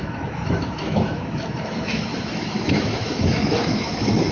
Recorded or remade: remade